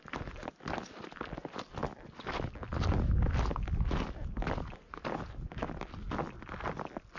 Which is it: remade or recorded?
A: recorded